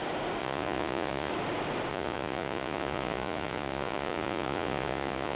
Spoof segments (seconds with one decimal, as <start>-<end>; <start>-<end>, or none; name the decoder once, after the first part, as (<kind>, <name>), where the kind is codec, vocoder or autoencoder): 0.4-1.3 (vocoder, Vocos); 1.9-5.4